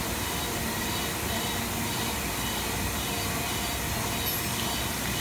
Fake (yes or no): no